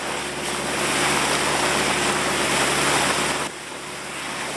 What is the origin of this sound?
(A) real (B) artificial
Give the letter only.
A